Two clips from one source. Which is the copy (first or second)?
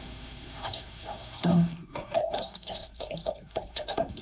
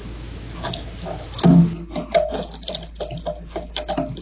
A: first